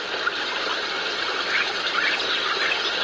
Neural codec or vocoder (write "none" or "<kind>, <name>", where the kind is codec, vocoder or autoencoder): none